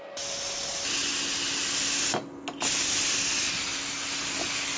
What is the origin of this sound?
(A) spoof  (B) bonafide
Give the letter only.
B